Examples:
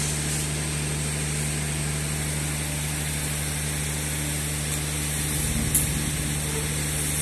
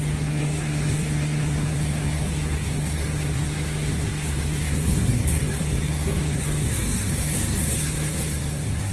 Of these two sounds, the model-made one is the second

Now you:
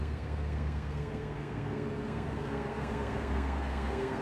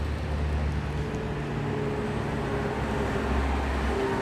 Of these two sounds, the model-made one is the first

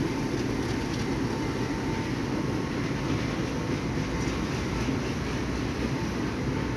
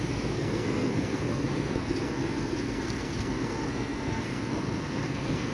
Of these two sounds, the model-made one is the second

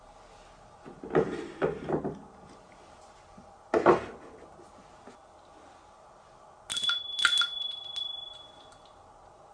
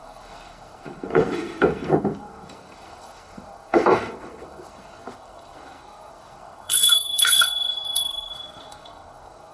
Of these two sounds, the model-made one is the second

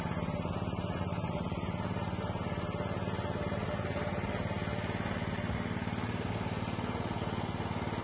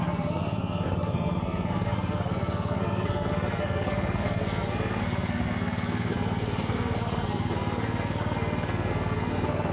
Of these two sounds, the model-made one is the second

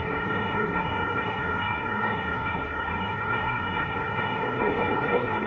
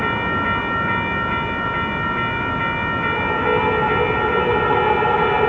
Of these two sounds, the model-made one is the first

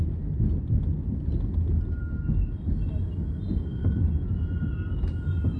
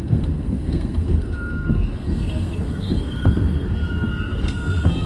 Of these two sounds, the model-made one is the second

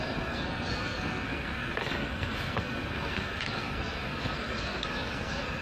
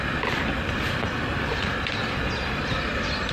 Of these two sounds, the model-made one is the first